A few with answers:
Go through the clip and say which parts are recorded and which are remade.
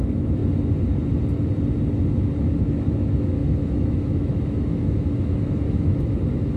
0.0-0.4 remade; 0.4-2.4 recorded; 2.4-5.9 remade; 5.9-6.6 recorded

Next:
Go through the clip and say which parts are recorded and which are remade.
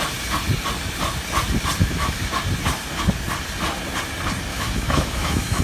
0.0-1.8 recorded; 1.8-2.3 remade; 2.3-4.5 recorded; 4.5-5.6 remade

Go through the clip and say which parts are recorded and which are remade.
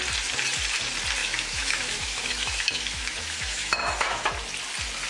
0.0-1.2 recorded; 1.2-4.3 remade; 4.3-5.1 recorded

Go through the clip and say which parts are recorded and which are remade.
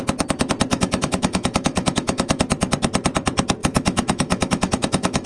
0.0-0.7 recorded; 0.7-2.4 remade; 2.4-3.6 recorded; 3.6-5.3 remade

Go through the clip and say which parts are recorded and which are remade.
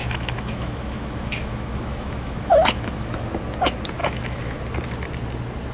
0.0-3.3 remade; 3.3-4.0 recorded; 4.0-4.6 remade; 4.6-5.7 recorded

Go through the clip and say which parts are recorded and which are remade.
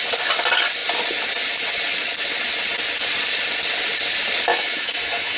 0.0-4.5 recorded; 4.5-5.4 remade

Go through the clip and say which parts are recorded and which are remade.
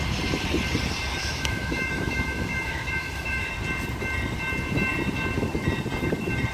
0.0-1.2 recorded; 1.2-3.5 remade; 3.5-6.5 recorded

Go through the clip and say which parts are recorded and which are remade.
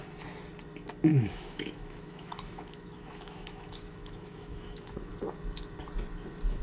0.0-1.1 recorded; 1.1-5.1 remade; 5.1-6.6 recorded